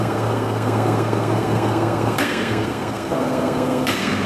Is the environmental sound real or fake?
fake